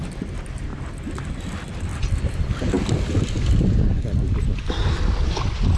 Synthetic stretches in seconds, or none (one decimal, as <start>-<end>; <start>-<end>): none